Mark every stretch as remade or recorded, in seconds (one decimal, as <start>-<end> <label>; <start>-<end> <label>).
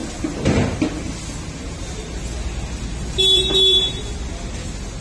0.0-5.0 recorded